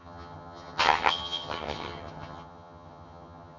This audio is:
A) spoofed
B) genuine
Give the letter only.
A